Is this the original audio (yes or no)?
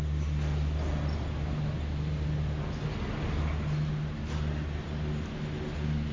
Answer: yes